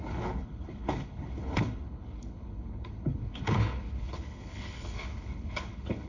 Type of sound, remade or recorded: remade